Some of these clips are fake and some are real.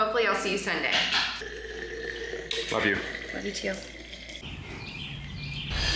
real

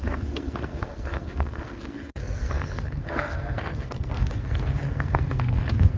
fake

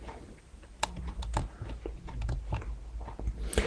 real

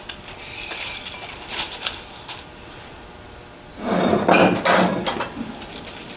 real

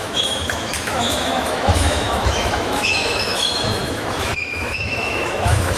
fake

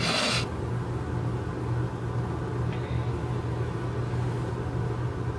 real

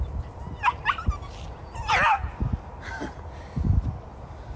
real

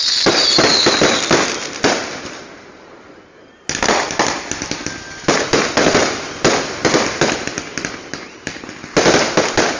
real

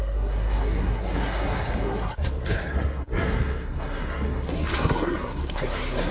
fake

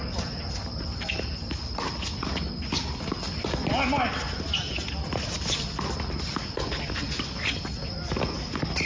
real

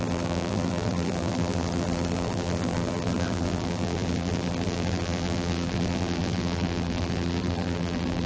fake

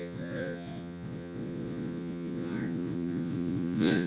fake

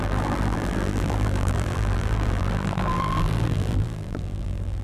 fake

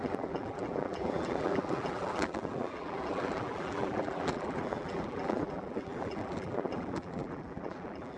fake